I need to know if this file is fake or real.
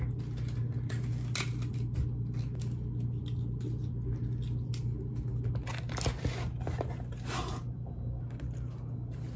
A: real